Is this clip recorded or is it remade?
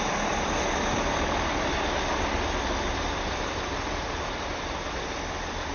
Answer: recorded